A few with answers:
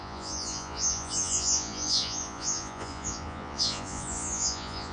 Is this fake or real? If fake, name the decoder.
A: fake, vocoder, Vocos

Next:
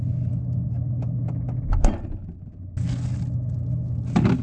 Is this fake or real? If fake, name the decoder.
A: real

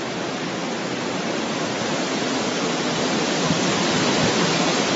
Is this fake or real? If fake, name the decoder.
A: fake, vocoder, BigVGAN v2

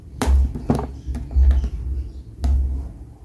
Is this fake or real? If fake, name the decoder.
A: real